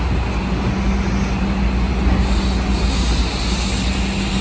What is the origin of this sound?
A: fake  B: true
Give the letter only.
B